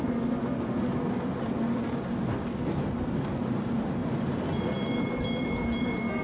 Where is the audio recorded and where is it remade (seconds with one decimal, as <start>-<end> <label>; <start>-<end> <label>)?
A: 0.0-6.2 recorded